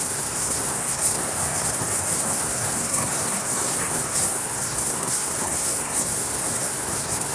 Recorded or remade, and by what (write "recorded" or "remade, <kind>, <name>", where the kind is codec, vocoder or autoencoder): remade, codec, SNAC